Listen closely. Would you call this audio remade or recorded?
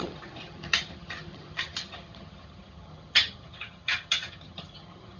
remade